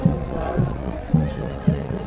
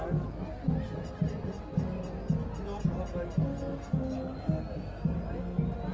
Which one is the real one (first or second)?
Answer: second